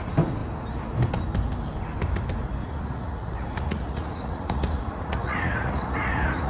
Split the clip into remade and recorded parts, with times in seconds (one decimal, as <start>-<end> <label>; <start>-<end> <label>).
0.0-2.6 recorded; 2.6-6.5 remade